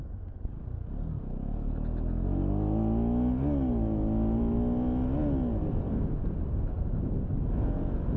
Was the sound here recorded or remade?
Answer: recorded